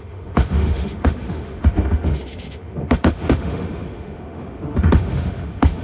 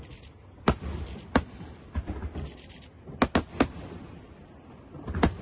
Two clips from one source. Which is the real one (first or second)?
second